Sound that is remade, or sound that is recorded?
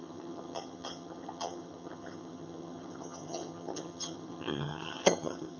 remade